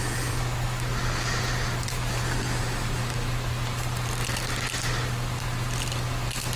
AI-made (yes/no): no